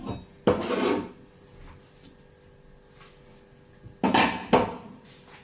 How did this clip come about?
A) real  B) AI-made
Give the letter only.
A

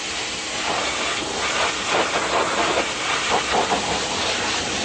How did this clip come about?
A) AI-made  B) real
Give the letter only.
B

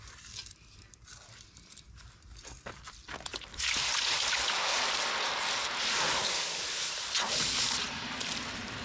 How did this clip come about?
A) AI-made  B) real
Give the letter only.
B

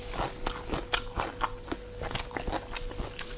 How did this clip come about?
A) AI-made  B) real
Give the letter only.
B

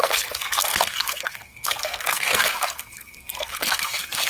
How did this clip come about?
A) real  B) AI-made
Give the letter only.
B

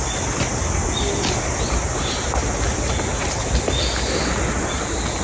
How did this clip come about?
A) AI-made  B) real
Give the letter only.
B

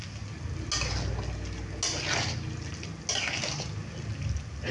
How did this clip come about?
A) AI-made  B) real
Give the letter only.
B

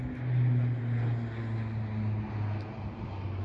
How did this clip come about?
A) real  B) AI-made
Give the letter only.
A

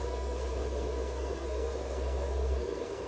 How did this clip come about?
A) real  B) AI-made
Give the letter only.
B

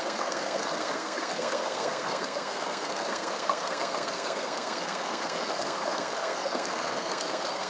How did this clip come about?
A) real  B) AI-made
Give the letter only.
B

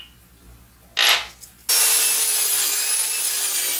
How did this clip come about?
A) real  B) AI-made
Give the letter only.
A